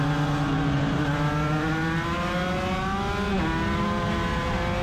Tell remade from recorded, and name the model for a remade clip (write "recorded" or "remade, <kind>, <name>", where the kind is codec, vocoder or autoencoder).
recorded